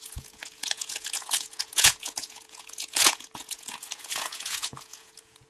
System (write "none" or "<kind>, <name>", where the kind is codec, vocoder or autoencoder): vocoder, Vocos